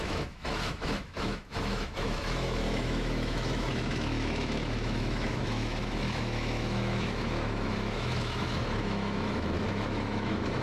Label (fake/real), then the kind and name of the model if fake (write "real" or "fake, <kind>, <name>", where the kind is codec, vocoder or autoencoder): fake, autoencoder, DAC-VAE